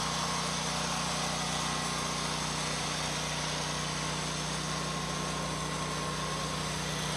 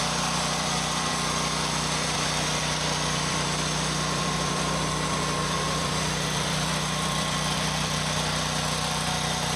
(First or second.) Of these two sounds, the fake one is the second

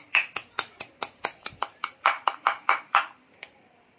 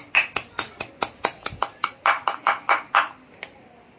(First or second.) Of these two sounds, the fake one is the first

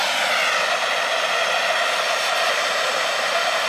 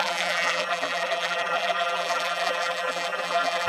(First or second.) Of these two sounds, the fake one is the second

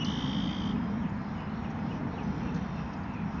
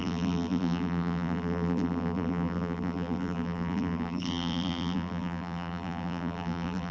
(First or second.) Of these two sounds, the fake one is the second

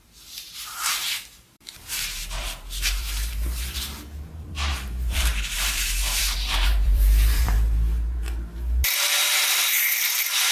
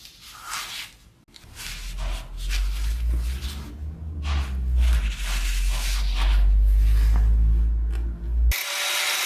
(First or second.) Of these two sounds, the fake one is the first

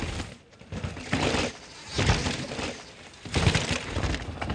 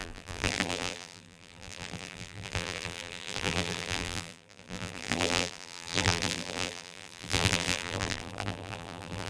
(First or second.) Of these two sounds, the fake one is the second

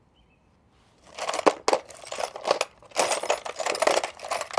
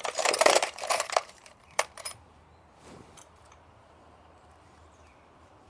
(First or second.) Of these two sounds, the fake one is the second